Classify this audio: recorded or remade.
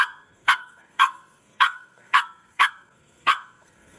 remade